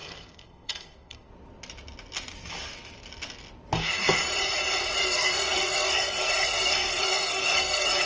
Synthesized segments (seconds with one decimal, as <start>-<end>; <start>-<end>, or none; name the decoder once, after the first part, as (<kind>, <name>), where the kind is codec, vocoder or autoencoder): 0.0-1.3 (codec, SNAC); 5.0-8.1